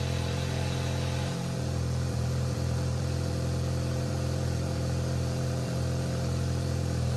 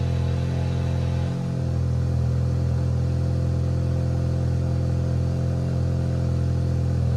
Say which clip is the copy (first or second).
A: first